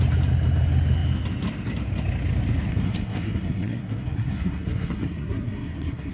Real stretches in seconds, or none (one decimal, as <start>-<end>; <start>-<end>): 0.0-2.7

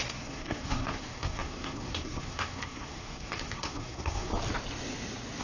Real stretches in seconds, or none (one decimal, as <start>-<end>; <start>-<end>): 4.3-5.4

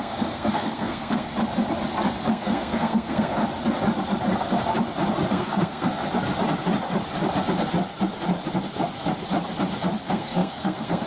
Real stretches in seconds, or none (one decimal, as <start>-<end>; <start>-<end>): 1.3-2.3; 3.4-5.3; 6.0-10.0

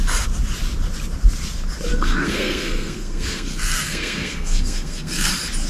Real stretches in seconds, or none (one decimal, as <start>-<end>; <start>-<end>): 0.0-1.9; 5.3-5.7

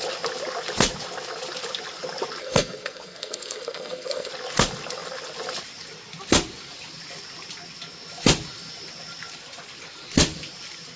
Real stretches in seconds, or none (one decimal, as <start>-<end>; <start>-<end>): 0.0-2.4; 4.3-11.0

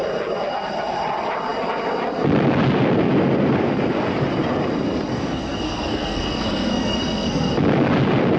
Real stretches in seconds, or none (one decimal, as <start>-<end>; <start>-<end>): 0.0-5.1; 7.5-8.4